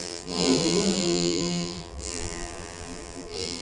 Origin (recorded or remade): remade